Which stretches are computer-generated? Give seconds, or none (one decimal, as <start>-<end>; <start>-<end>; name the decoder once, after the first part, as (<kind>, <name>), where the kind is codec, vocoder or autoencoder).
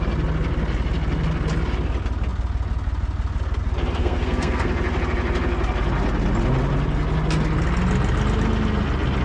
4.0-4.7 (codec, SNAC)